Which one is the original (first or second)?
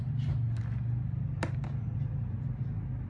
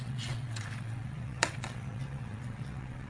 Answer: first